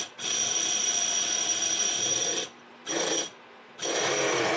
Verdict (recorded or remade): recorded